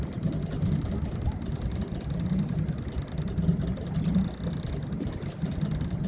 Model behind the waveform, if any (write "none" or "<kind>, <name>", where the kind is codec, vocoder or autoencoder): vocoder, BigVGAN v2